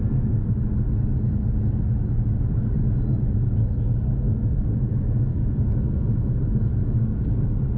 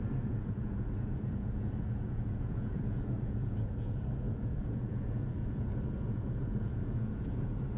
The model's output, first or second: second